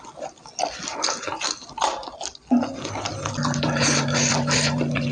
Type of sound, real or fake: real